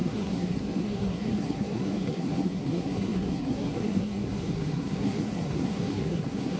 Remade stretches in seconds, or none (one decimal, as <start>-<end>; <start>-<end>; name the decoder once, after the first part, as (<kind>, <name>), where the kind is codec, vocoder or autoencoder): 0.0-6.6 (codec, SNAC)

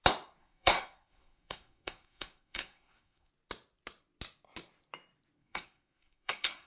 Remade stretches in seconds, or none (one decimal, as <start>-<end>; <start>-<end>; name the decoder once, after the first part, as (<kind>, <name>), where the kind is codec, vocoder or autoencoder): 0.4-3.3 (codec, SNAC); 5.4-6.7

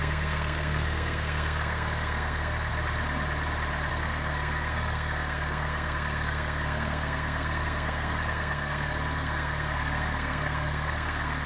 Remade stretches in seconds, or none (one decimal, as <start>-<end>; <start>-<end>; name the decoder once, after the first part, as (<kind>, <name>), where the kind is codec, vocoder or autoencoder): 0.0-2.7 (codec, SNAC); 3.9-11.5

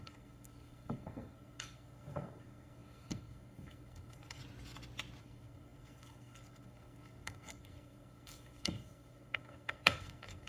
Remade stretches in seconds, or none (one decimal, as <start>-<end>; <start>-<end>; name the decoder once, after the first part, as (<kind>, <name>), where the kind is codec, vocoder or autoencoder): 0.0-4.4 (codec, SNAC); 5.2-10.5